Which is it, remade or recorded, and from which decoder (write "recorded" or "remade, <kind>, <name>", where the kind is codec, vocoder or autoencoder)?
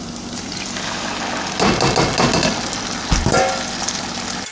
recorded